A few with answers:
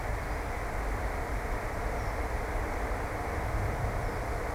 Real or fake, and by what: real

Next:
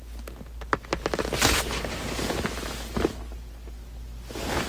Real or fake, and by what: real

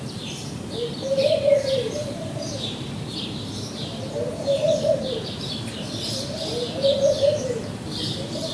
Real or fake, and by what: fake, vocoder, BigVGAN v2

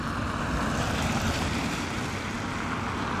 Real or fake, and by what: real